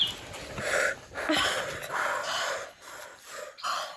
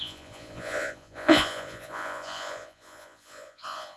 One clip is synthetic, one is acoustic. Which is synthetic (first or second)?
second